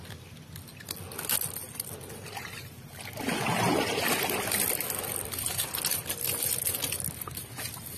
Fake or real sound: real